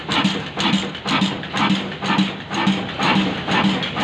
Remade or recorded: recorded